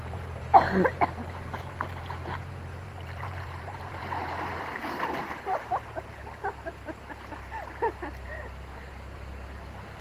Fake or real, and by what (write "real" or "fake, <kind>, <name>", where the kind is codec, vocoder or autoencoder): fake, vocoder, BigVGAN v2